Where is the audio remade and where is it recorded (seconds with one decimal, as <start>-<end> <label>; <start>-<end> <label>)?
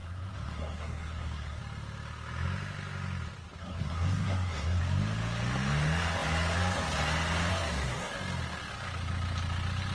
0.0-1.6 remade; 1.6-3.6 recorded; 3.6-4.8 remade; 4.8-7.5 recorded; 7.5-8.1 remade; 8.1-9.9 recorded